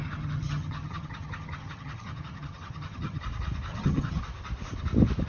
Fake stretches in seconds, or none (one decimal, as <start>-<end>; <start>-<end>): 0.0-3.2; 3.7-4.2